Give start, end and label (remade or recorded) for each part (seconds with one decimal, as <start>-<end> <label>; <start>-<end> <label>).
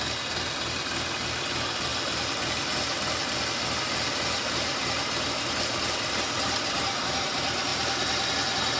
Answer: 0.0-8.8 recorded